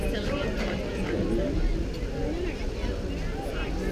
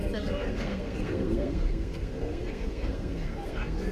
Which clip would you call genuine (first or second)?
first